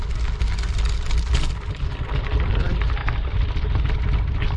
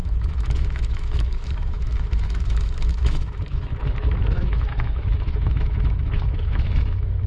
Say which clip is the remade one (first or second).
second